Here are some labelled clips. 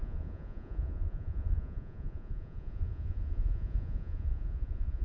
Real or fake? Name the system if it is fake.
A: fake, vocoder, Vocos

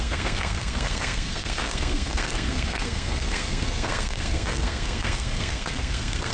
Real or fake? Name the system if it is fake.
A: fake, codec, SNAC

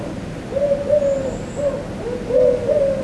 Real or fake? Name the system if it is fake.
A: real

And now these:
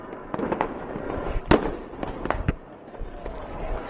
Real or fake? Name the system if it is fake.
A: fake, vocoder, BigVGAN v2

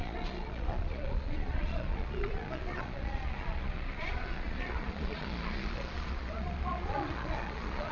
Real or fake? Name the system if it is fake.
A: fake, vocoder, Vocos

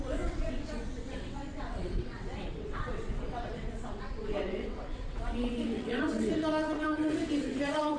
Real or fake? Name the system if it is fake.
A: fake, vocoder, WaveNeXt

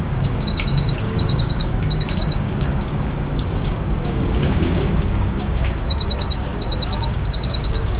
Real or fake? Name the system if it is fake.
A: fake, codec, DAC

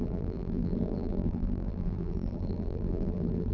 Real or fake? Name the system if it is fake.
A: fake, vocoder, BigVGAN v2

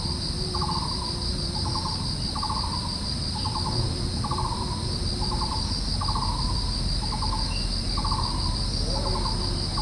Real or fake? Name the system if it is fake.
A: real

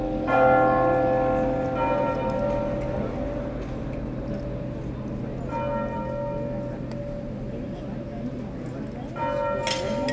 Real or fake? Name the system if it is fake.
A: real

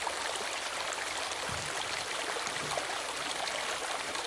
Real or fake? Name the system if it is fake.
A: real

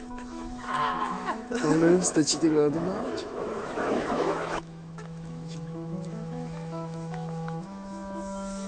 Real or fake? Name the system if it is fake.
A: fake, autoencoder, DAC-VAE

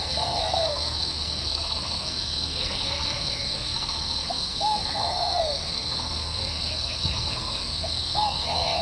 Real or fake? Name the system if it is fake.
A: fake, codec, SNAC